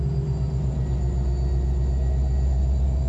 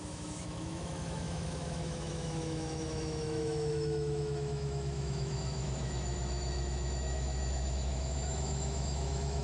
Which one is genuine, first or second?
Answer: first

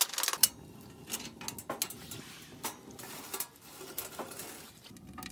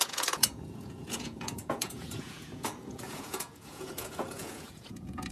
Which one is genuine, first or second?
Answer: first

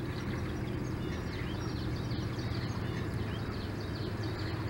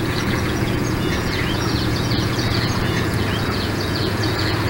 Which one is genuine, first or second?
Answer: first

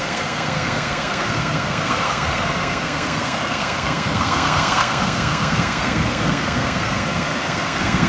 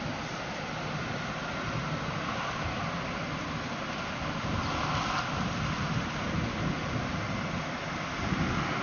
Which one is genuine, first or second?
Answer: second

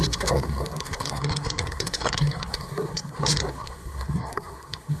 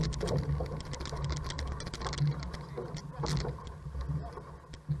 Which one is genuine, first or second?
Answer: second